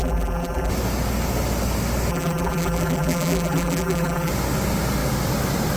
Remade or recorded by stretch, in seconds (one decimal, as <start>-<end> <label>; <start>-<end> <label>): 0.0-0.7 remade; 0.7-2.1 recorded; 2.1-4.3 remade; 4.3-5.8 recorded